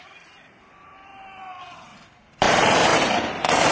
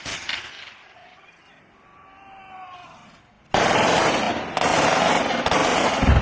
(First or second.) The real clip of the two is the second